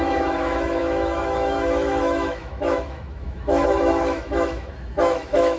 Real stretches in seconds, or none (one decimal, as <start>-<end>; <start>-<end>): none